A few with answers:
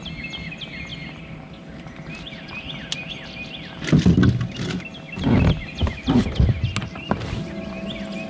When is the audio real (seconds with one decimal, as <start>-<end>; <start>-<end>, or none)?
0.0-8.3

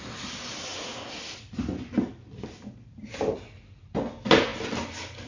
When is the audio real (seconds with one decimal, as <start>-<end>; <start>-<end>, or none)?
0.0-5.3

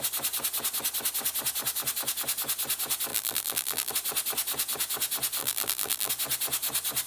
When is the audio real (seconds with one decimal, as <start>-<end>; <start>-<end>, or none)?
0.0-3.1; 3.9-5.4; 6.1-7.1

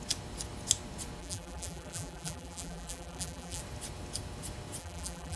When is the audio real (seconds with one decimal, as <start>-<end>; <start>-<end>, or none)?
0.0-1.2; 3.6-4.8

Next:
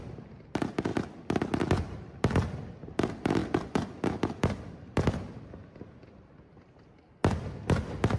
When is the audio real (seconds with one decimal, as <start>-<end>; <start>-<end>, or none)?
0.0-0.9; 1.6-3.4; 6.3-8.2

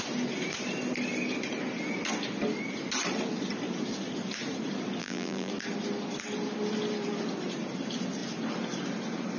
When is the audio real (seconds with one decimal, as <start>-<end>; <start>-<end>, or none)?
0.0-5.0; 5.5-9.4

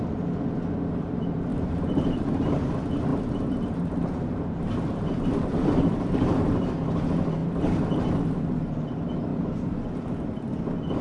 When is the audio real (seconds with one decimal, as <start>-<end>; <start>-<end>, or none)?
0.0-1.5; 2.7-3.1; 6.7-7.4; 8.0-11.0

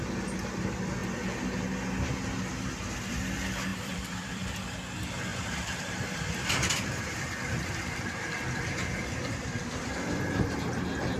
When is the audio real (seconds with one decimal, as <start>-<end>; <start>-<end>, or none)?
0.0-3.7; 4.6-5.3; 10.2-11.2